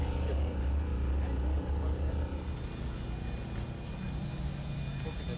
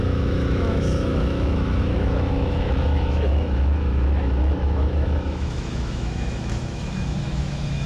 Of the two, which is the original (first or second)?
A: first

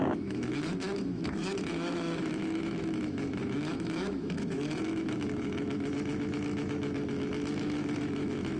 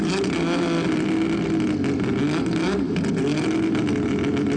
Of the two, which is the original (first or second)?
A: second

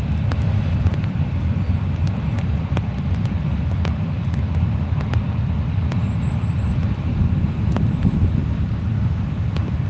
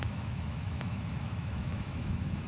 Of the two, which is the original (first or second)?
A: first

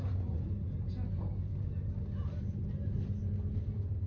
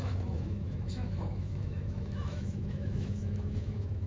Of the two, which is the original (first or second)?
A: first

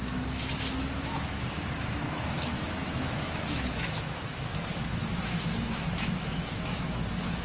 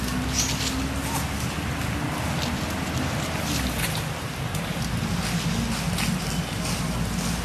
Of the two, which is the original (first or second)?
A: second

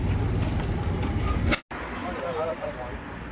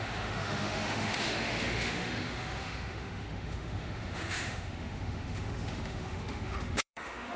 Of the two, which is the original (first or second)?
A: first